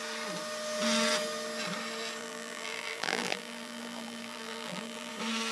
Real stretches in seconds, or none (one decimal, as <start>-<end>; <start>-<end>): 0.0-2.2; 5.1-5.5